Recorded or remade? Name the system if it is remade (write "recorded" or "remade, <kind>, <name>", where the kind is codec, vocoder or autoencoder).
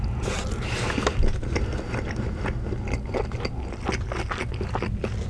recorded